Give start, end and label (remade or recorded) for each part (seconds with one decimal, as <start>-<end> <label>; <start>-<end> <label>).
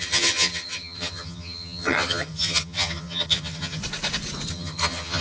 0.0-3.8 remade; 3.8-4.5 recorded; 4.5-5.2 remade